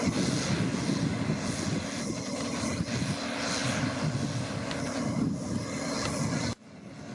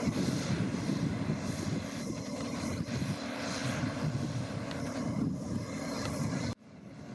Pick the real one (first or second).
first